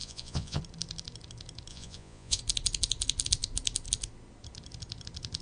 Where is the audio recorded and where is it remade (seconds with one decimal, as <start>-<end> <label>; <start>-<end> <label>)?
0.0-0.6 remade; 0.6-1.7 recorded; 1.7-2.4 remade; 2.4-5.4 recorded

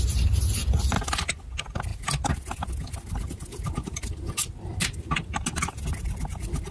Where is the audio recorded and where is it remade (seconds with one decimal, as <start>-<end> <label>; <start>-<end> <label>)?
0.0-6.7 recorded